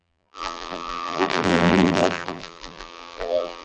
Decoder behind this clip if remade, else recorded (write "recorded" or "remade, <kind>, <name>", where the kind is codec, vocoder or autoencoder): remade, vocoder, BigVGAN v2